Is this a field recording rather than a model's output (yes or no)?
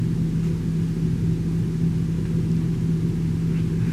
yes